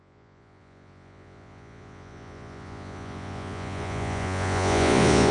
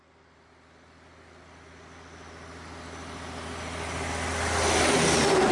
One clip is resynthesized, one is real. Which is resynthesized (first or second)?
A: first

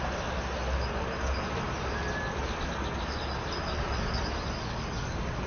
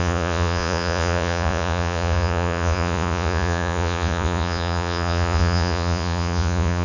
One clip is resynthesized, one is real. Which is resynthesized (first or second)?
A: second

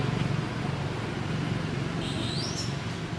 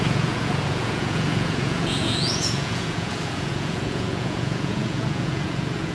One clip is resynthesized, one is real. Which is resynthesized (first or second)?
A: second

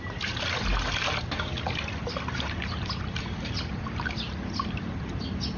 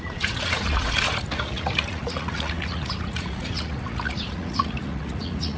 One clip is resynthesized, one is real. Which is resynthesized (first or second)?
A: second